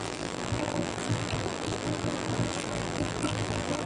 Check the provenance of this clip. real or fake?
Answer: fake